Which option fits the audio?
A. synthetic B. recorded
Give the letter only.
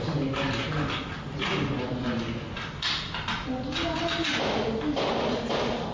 B